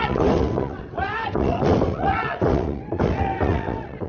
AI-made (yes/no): yes